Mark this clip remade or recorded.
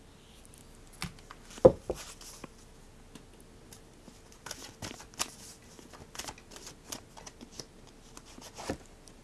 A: recorded